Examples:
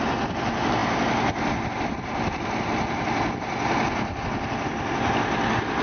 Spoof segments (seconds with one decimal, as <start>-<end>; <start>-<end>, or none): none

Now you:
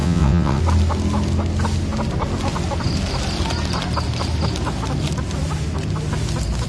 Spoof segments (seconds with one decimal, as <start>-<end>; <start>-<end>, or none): 0.0-0.6

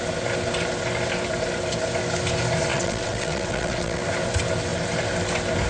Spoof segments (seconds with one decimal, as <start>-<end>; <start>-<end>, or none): 2.7-4.0

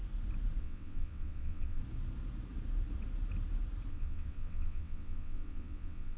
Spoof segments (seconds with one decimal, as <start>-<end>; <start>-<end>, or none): 0.6-1.8; 3.9-6.2

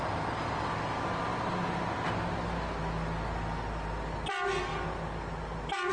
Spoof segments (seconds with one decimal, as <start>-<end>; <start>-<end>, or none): none

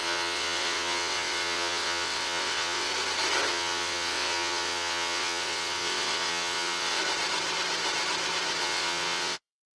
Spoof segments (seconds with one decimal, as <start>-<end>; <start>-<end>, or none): 0.0-2.9; 3.5-7.0; 8.6-9.8